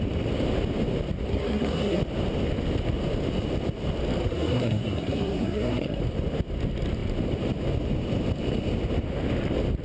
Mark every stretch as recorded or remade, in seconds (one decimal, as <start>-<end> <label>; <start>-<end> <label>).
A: 0.0-1.3 recorded; 1.3-2.0 remade; 2.0-4.2 recorded; 4.2-6.0 remade; 6.0-9.8 recorded